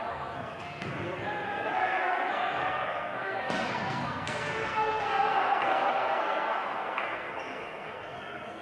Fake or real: fake